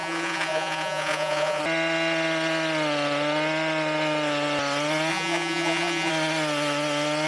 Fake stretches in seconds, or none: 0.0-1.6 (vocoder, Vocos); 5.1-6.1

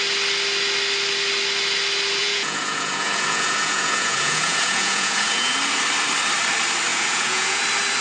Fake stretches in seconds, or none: 2.2-5.5 (vocoder, Vocos); 6.9-7.6

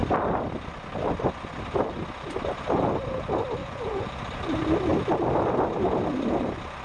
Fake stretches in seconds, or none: 3.6-4.1 (vocoder, Vocos)

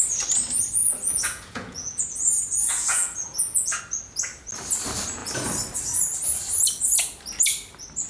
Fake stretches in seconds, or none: 0.8-3.8 (vocoder, Vocos)